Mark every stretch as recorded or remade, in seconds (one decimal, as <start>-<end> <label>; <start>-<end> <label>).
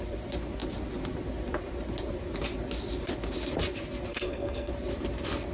0.0-4.1 recorded; 4.1-4.7 remade; 4.7-5.5 recorded